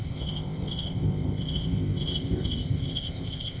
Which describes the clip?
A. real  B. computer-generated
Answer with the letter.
B